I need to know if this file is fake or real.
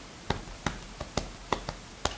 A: real